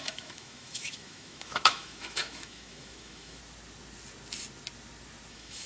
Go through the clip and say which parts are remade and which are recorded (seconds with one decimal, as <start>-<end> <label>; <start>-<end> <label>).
0.0-3.4 remade; 3.4-5.3 recorded; 5.3-5.7 remade